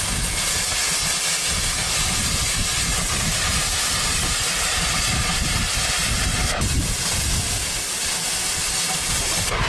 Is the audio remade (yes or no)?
no